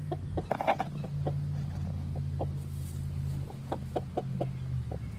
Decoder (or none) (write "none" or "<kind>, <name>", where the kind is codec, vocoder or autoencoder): none